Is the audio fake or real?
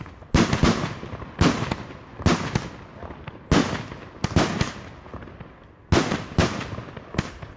real